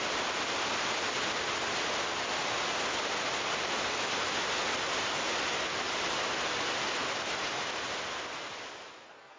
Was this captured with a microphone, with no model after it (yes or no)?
yes